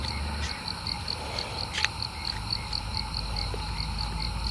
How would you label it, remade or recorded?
recorded